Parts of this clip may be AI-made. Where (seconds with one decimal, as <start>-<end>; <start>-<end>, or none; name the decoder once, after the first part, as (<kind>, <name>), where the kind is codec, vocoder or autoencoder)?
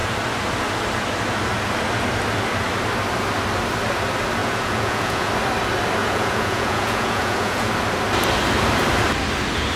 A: 4.4-5.3 (vocoder, Vocos); 6.0-7.7